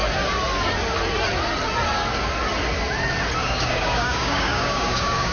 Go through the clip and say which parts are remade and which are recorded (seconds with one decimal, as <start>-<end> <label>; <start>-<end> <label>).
0.0-3.4 recorded; 3.4-5.3 remade